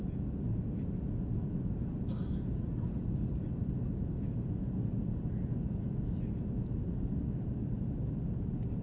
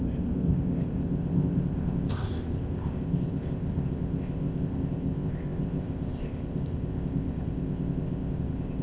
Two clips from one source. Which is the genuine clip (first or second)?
first